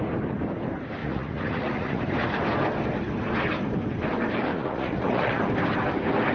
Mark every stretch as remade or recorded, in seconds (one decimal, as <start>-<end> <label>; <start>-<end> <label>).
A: 0.0-1.0 recorded; 1.0-2.0 remade; 2.0-4.5 recorded; 4.5-5.4 remade; 5.4-6.3 recorded